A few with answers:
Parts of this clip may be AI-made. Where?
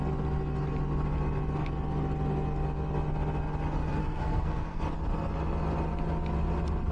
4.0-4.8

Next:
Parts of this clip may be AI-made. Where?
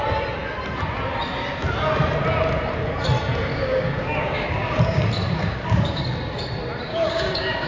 3.5-5.0; 5.4-6.0; 6.9-7.7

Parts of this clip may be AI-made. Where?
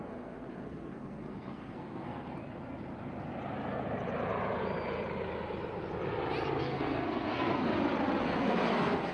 0.0-2.3; 6.6-7.7; 8.2-9.1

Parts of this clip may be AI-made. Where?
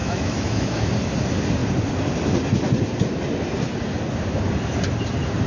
0.0-0.9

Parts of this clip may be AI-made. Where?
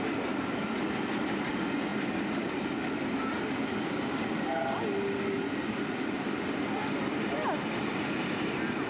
0.0-8.9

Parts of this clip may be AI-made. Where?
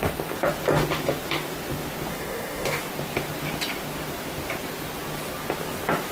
2.1-2.8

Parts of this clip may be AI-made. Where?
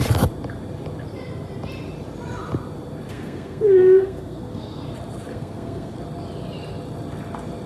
3.1-4.8; 5.3-6.0